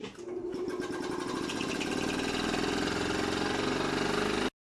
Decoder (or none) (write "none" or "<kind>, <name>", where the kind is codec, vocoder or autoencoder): none